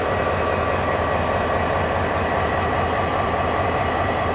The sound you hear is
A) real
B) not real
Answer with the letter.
B